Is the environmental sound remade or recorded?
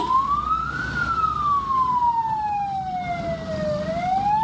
recorded